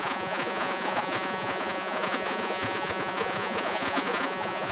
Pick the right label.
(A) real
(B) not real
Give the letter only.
B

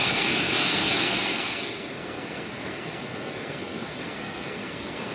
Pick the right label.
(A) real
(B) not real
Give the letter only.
B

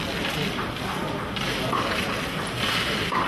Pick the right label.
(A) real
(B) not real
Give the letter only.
A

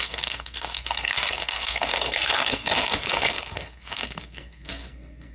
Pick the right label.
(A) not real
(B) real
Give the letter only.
A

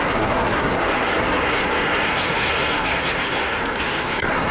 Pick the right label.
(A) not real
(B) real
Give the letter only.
A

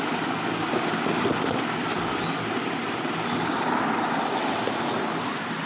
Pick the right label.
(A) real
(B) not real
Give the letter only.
A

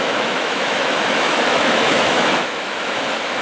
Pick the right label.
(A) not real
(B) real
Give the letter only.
A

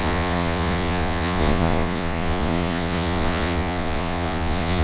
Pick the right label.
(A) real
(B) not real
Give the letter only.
B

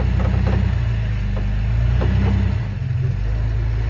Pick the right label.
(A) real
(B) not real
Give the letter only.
A